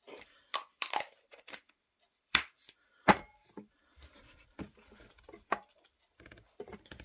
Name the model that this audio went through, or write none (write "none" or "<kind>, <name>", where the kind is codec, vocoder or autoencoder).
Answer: vocoder, BigVGAN v2